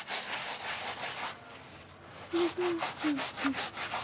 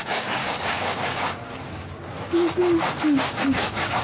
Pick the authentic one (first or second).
first